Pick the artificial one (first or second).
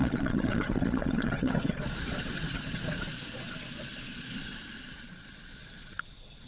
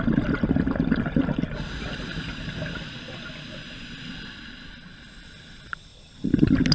first